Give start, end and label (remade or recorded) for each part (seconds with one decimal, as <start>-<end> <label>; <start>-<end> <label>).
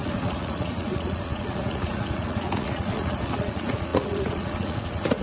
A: 0.0-5.2 remade